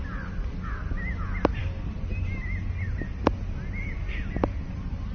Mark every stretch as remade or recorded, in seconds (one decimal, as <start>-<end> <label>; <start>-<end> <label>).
0.0-5.1 recorded